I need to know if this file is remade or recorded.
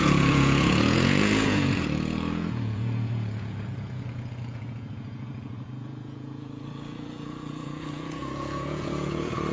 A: remade